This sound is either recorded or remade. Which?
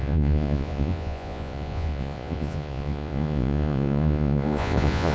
remade